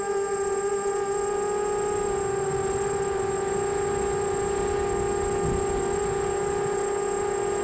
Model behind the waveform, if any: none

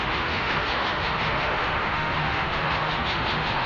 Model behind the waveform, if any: autoencoder, DAC-VAE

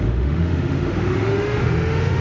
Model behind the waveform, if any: autoencoder, DAC-VAE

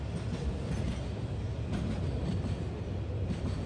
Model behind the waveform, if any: none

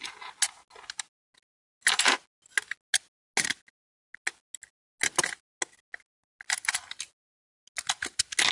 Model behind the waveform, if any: none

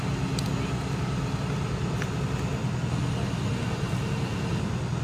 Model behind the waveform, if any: none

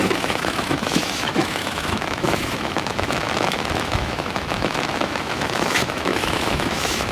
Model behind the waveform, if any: autoencoder, DAC-VAE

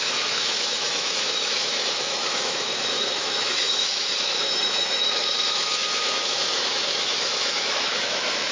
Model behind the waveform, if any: autoencoder, DAC-VAE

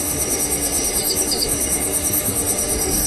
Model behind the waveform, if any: autoencoder, DAC-VAE